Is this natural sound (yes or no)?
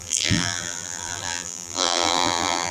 no